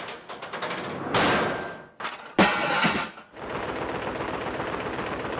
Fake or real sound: real